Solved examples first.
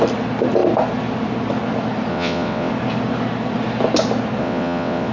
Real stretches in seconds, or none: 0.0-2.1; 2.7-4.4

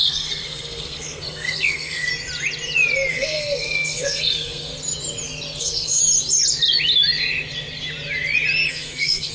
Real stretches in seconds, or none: 2.1-3.1; 4.7-5.6; 6.0-8.7

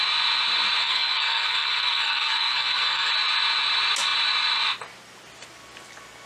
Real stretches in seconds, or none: 0.0-0.8; 3.1-6.3